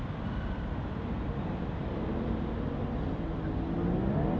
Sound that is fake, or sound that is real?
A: real